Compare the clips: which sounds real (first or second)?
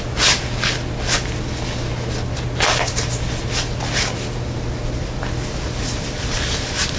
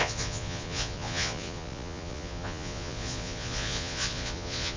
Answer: first